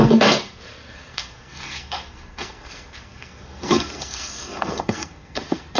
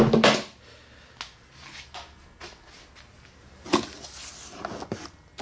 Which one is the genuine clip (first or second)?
second